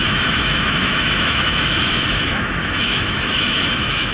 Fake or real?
fake